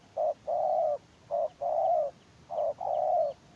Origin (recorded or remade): recorded